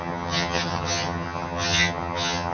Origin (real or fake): fake